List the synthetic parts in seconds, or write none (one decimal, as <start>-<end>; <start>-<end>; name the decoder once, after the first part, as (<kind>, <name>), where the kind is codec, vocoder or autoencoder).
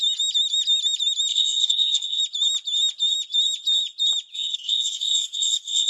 1.3-2.2 (codec, SNAC); 4.3-5.9